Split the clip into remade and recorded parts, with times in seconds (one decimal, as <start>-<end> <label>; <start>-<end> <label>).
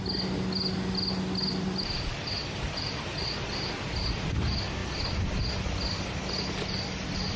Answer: 0.0-7.4 recorded